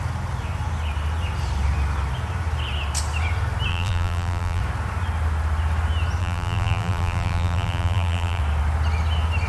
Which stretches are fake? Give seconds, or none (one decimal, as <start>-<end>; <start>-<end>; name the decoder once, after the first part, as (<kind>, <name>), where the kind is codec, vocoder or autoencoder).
3.7-4.6 (vocoder, BigVGAN v2); 6.2-8.4